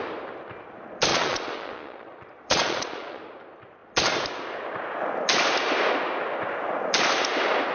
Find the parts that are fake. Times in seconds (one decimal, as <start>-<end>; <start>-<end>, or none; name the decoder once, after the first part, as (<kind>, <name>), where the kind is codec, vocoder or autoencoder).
1.1-3.2 (vocoder, Vocos)